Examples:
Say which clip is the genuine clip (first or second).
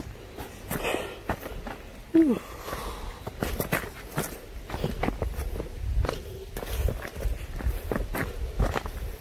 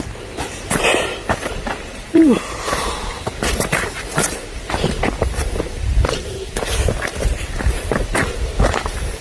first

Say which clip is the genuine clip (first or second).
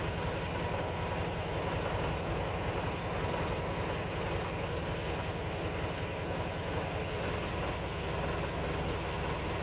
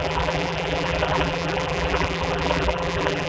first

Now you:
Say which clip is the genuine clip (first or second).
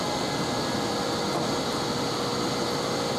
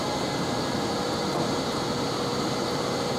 first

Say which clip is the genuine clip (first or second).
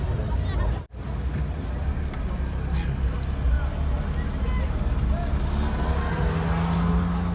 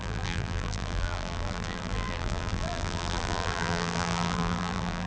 first